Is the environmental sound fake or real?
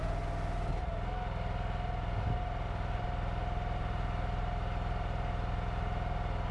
real